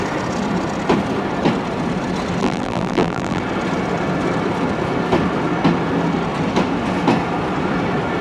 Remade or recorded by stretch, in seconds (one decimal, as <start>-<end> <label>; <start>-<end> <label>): 0.0-2.4 recorded; 2.4-3.4 remade; 3.4-8.2 recorded

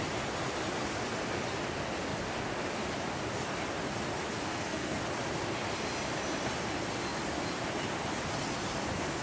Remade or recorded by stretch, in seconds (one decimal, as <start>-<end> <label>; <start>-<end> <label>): 0.0-4.5 recorded; 4.5-5.0 remade; 5.0-9.2 recorded